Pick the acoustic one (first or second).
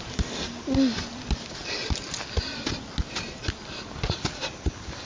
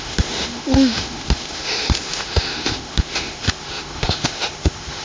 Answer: first